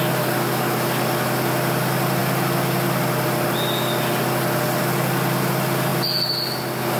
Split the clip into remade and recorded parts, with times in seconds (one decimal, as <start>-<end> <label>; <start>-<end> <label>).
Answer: 0.0-7.0 recorded